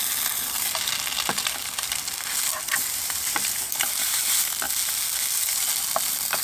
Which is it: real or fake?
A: real